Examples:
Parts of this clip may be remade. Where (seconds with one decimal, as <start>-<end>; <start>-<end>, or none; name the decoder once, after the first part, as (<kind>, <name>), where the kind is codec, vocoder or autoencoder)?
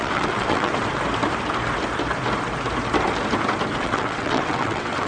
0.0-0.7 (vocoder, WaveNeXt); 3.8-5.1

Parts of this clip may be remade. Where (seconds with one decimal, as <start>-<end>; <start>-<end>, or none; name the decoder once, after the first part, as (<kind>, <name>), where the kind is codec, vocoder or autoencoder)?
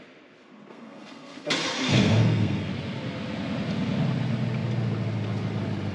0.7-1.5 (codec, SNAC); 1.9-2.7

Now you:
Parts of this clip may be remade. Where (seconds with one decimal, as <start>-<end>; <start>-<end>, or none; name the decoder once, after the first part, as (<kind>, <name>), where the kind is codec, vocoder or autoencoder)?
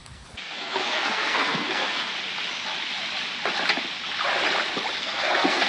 0.0-2.1 (codec, SNAC); 5.0-5.7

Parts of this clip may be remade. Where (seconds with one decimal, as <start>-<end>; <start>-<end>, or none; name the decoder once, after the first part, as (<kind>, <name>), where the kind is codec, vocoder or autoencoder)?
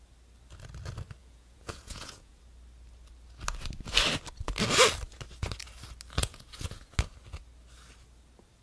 1.2-2.4 (vocoder, Vocos); 6.2-6.9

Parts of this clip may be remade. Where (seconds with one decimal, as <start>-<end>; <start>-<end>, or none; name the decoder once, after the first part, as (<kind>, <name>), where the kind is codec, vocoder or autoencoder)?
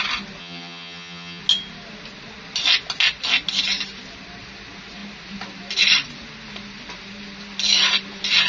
0.4-1.4 (vocoder, HiFi-GAN)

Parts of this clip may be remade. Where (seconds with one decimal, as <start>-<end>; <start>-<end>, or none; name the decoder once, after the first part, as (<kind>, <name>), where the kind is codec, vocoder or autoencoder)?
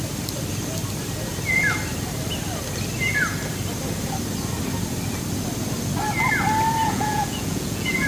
6.8-8.1 (vocoder, Vocos)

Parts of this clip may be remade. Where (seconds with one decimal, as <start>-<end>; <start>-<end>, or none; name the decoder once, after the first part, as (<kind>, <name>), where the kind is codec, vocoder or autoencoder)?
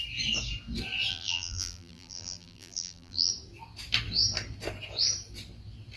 1.1-3.3 (vocoder, BigVGAN v2)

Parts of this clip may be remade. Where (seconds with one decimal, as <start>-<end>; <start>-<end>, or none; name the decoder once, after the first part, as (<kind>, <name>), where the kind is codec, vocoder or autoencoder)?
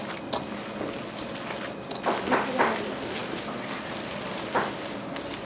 none